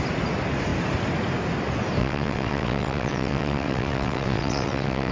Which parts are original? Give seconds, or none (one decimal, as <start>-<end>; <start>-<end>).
0.0-2.0